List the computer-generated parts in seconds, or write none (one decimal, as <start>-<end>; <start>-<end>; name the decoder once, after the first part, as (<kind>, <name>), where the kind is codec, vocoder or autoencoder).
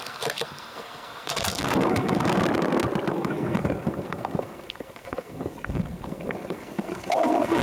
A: 0.0-2.4 (codec, SNAC); 3.1-7.6